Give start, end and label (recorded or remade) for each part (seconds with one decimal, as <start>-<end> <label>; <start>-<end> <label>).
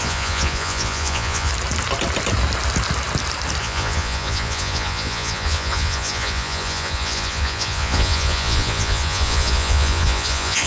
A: 0.0-1.5 remade; 1.5-3.6 recorded; 3.6-10.7 remade